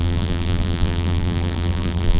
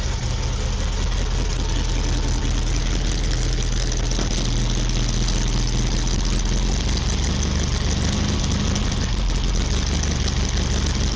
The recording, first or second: second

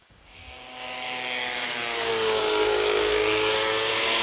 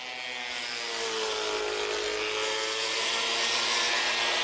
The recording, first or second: second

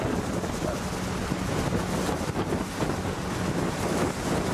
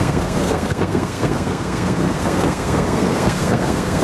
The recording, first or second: first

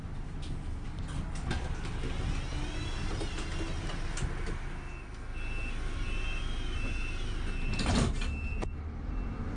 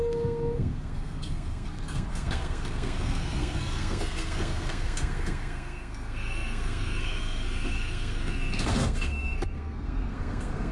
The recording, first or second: first